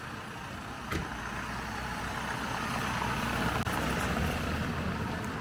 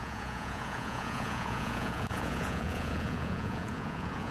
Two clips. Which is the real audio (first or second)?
first